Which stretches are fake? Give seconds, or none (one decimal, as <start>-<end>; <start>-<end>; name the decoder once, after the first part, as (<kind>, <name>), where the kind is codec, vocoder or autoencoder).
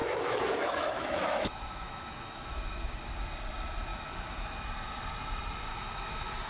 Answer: 0.0-3.0 (autoencoder, DAC-VAE); 3.9-4.5; 5.7-6.5